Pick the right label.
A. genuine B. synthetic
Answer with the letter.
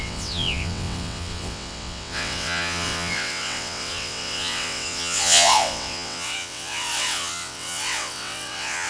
B